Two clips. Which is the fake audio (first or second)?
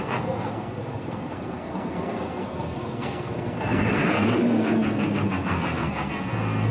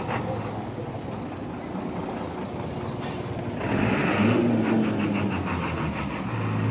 first